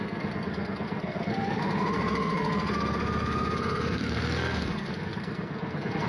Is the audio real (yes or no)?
no